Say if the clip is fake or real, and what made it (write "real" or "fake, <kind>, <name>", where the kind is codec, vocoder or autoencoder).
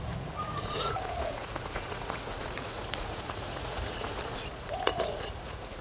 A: fake, vocoder, Vocos